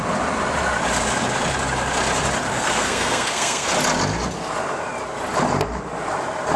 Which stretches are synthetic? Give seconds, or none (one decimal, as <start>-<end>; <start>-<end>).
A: 2.5-3.7